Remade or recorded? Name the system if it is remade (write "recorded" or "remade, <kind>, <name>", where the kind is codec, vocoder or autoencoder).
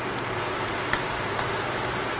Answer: recorded